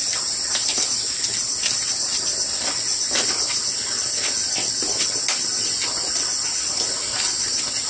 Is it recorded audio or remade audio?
recorded